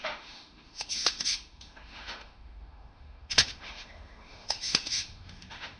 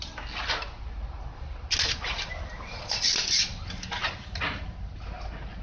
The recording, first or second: second